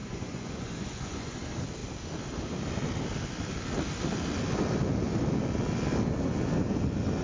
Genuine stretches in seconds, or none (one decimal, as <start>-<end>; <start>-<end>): 1.4-7.2